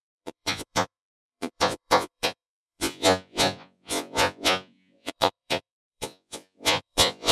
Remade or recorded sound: remade